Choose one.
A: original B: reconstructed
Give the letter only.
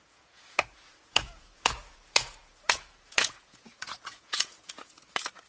B